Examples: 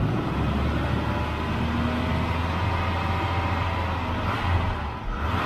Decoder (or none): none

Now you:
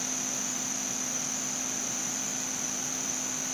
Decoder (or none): none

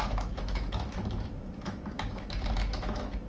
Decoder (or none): autoencoder, DAC-VAE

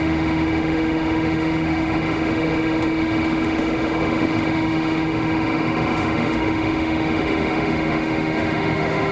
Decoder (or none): autoencoder, DAC-VAE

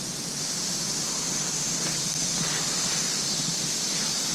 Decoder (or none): none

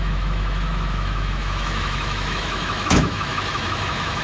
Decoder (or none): autoencoder, DAC-VAE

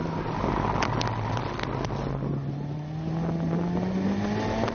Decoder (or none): none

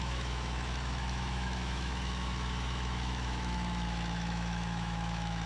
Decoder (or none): autoencoder, DAC-VAE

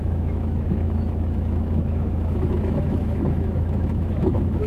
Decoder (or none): autoencoder, DAC-VAE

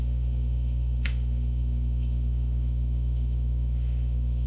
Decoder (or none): autoencoder, DAC-VAE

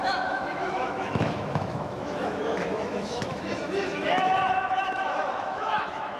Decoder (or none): autoencoder, DAC-VAE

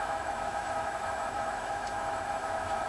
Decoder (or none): autoencoder, DAC-VAE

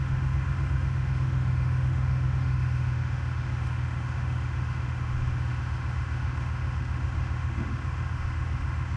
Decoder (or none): autoencoder, DAC-VAE